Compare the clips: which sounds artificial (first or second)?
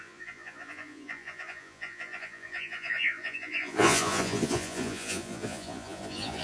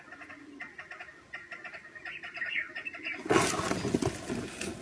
first